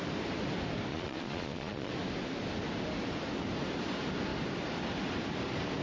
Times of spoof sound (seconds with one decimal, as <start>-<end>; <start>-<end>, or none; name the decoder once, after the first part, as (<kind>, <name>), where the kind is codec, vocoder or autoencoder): 0.9-1.9 (vocoder, Vocos)